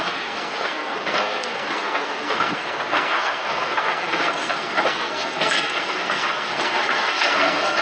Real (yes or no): no